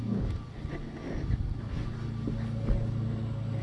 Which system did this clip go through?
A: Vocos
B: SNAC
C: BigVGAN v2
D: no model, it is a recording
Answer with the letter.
D